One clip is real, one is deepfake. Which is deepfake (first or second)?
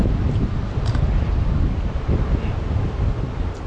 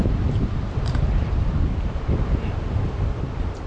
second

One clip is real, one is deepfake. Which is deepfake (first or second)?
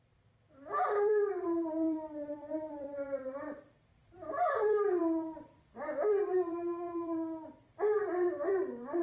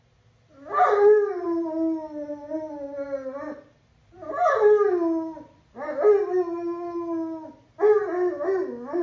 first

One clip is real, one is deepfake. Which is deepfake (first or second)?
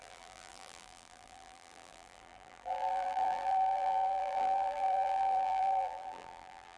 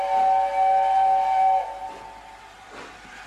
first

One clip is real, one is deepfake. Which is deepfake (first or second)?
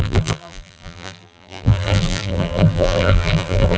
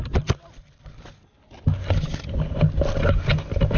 first